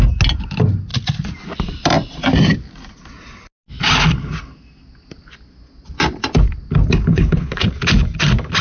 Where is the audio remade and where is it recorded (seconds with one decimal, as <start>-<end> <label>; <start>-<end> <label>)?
0.0-7.1 recorded; 7.1-7.7 remade; 7.7-8.6 recorded